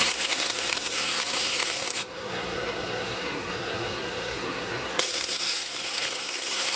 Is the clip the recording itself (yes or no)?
no